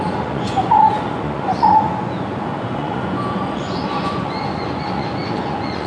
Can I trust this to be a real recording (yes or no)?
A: no